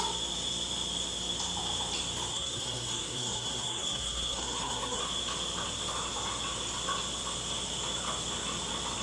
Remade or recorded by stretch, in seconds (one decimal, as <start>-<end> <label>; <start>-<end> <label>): 0.0-2.3 recorded; 2.3-5.0 remade; 5.0-9.0 recorded